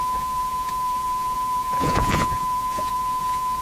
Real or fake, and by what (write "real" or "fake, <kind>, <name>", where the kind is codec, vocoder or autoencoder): fake, vocoder, Vocos